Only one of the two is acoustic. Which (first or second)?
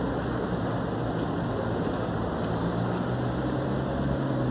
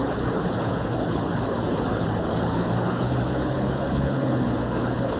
first